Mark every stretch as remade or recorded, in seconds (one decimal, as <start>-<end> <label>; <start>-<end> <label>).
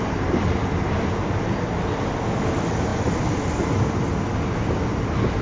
0.0-5.4 recorded